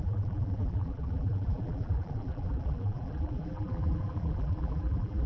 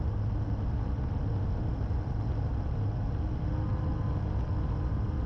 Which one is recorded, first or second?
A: second